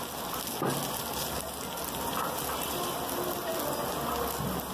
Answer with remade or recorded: recorded